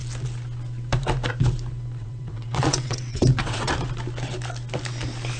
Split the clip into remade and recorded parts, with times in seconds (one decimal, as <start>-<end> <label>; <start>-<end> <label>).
0.0-2.0 recorded; 2.0-3.7 remade; 3.7-5.4 recorded